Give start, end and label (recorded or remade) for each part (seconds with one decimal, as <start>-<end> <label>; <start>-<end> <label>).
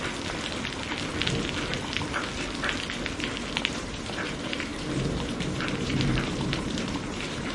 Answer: 0.0-3.6 recorded; 3.6-7.5 remade